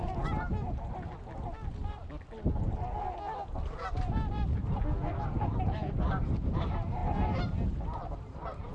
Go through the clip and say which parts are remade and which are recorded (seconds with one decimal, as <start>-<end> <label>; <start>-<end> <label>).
0.0-3.9 recorded; 3.9-4.6 remade; 4.6-5.5 recorded; 5.5-7.0 remade; 7.0-8.1 recorded; 8.1-8.7 remade